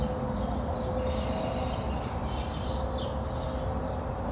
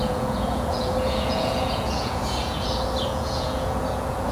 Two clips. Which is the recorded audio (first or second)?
first